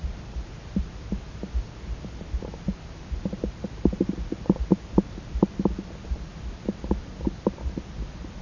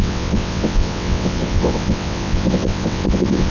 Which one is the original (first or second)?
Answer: first